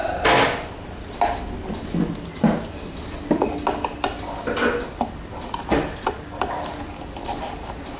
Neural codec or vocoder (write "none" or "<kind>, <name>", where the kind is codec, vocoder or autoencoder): none